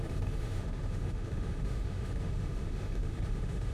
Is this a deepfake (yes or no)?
yes